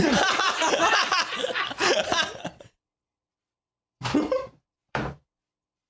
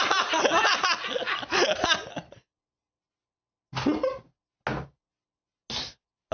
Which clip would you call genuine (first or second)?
second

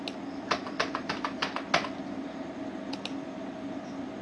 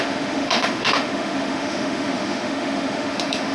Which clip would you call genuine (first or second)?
first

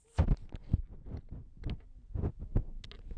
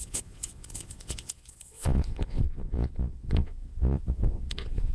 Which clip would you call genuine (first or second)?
first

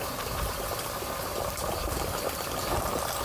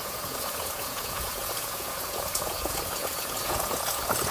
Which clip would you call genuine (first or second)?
first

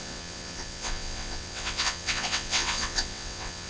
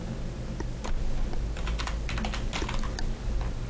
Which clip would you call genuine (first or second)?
second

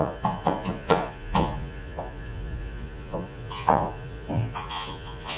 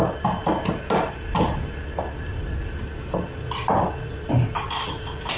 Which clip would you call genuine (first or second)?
second